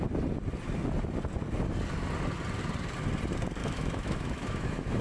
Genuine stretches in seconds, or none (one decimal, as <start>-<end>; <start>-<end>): 0.0-3.6